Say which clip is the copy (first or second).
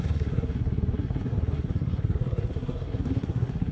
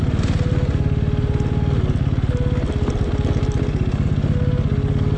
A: first